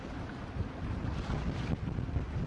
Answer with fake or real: real